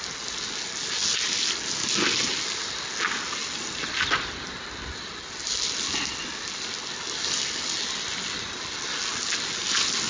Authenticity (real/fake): real